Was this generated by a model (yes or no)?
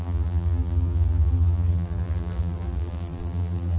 yes